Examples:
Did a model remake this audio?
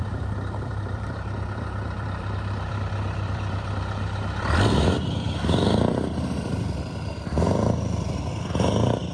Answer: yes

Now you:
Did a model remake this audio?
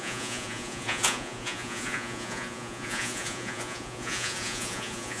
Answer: yes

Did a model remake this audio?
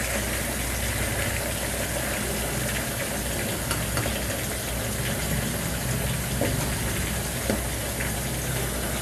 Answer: no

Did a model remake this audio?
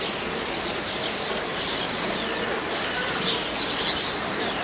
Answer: yes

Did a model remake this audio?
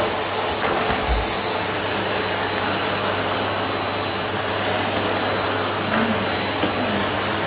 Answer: no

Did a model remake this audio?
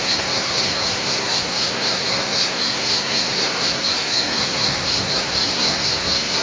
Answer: yes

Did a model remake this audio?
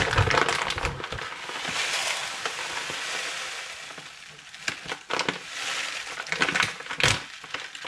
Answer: no